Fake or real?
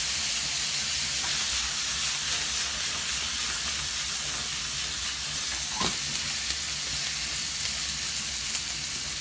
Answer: real